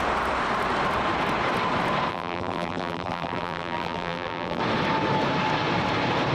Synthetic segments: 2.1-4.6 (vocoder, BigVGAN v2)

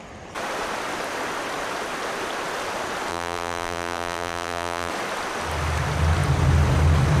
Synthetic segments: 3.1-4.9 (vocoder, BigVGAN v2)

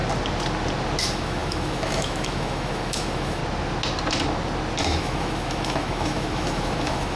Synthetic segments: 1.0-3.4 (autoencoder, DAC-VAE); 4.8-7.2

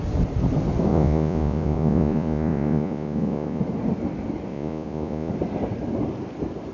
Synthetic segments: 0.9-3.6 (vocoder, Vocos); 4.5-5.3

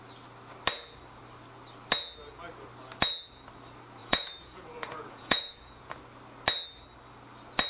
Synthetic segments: 4.0-6.0 (vocoder, Vocos)